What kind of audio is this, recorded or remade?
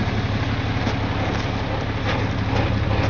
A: recorded